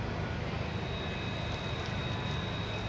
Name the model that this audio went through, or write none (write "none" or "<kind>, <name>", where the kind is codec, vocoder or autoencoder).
none